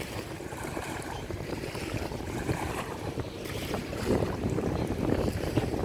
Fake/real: fake